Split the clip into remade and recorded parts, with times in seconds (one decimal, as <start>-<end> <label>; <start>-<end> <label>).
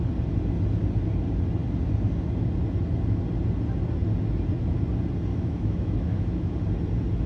0.0-5.3 recorded; 5.3-6.5 remade; 6.5-7.3 recorded